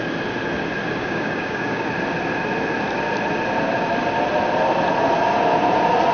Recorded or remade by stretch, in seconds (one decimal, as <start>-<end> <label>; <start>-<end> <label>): 0.0-1.0 recorded; 1.0-1.9 remade; 1.9-6.1 recorded